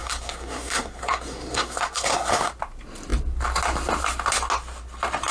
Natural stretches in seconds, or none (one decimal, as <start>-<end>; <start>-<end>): 2.5-5.3